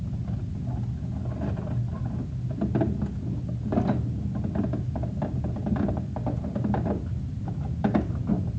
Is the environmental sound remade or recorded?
recorded